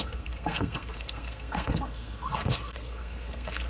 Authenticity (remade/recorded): remade